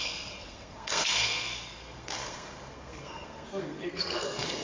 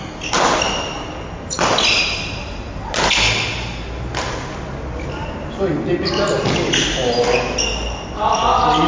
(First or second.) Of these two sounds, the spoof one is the first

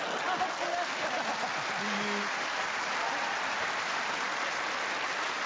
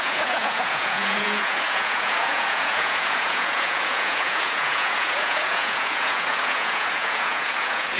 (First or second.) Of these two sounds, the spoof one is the second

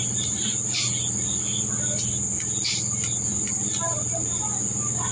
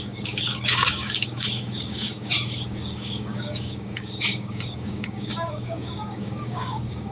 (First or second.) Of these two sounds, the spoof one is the second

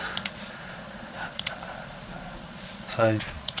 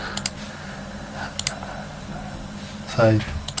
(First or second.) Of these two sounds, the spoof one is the first